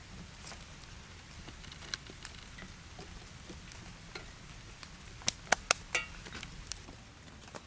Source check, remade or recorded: recorded